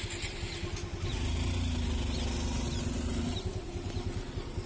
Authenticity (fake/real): real